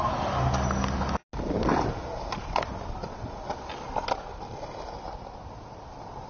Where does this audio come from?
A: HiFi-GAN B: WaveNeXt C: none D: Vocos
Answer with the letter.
C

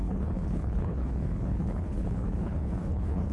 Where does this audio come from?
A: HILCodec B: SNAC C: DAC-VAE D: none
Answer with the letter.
A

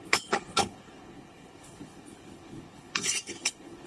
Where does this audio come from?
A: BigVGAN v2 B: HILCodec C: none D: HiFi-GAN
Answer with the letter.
B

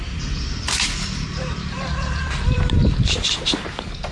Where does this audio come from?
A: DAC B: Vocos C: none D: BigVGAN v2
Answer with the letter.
D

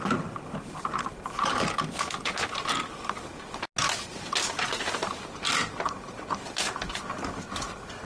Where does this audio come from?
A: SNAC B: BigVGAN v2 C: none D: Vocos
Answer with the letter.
C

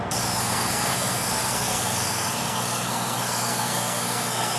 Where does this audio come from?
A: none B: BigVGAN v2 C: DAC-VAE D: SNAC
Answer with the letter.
D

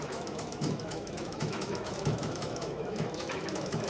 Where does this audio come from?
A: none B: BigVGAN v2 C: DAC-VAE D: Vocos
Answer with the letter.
C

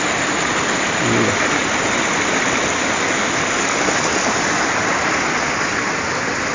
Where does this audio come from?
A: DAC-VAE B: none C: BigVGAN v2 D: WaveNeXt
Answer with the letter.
B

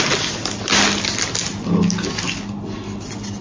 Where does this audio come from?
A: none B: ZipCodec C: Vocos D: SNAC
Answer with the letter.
A